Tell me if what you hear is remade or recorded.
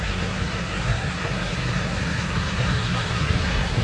remade